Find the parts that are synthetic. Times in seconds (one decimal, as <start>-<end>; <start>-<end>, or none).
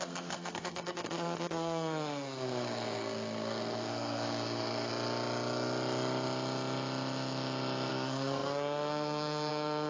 0.0-4.9; 7.9-9.9